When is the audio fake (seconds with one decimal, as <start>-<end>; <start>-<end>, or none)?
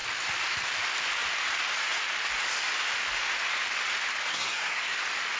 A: 4.3-5.0